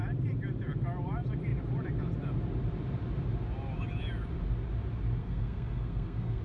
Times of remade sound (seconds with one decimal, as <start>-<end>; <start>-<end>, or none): 5.2-6.4